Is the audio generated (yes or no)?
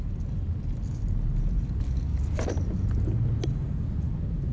no